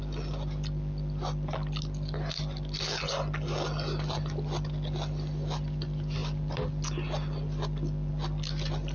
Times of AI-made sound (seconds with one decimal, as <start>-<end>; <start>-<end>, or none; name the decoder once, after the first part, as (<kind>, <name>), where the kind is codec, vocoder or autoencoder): none